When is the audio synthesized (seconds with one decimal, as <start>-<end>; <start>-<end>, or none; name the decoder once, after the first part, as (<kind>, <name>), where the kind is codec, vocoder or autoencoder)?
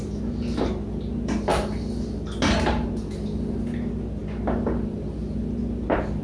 none